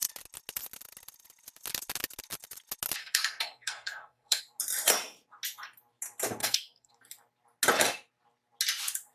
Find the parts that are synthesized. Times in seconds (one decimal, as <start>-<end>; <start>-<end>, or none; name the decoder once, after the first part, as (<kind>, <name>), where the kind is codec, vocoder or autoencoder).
3.0-4.4 (codec, SNAC); 6.4-6.9